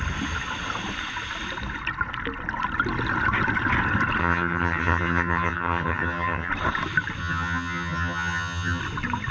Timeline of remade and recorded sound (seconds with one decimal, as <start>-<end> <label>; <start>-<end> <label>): 0.0-4.2 recorded; 4.2-6.5 remade; 6.5-7.2 recorded; 7.2-8.8 remade; 8.8-9.3 recorded

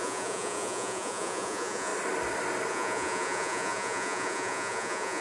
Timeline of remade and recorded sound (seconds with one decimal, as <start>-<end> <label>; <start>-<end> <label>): 0.0-1.9 remade; 1.9-2.7 recorded; 2.7-5.2 remade

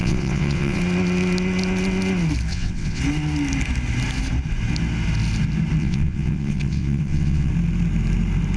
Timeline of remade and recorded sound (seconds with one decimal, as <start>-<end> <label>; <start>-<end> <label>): 0.0-0.8 remade; 0.8-2.5 recorded; 2.5-3.0 remade; 3.0-5.8 recorded; 5.8-7.5 remade; 7.5-8.6 recorded